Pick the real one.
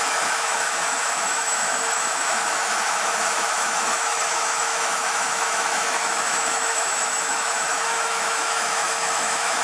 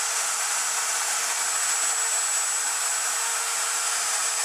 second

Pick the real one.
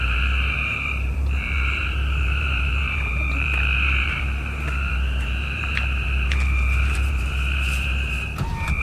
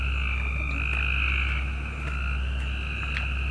second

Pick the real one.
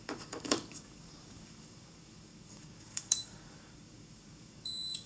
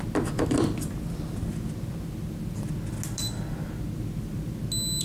second